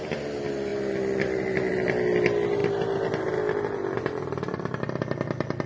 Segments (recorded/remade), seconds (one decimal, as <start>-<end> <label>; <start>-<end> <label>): 0.0-5.7 recorded